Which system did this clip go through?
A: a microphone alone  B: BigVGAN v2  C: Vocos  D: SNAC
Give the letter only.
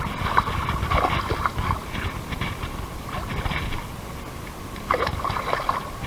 A